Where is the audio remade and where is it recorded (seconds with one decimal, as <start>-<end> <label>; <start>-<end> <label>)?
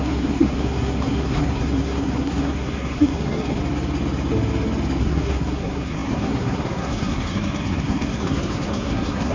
0.0-3.6 remade; 3.6-5.0 recorded; 5.0-9.3 remade